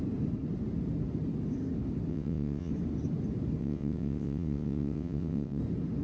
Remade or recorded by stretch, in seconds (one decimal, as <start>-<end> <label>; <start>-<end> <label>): 0.0-2.1 recorded; 2.1-2.7 remade; 2.7-3.6 recorded; 3.6-5.6 remade; 5.6-6.0 recorded